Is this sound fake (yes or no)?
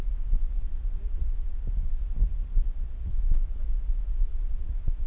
no